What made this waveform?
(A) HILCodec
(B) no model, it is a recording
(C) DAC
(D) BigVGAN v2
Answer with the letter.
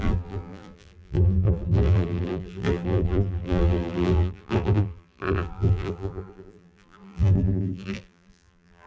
D